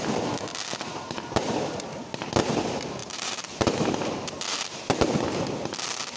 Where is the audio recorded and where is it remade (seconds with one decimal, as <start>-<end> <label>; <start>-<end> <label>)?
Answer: 0.0-3.0 recorded; 3.0-4.1 remade; 4.1-6.2 recorded